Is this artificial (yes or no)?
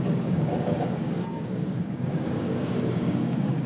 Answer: yes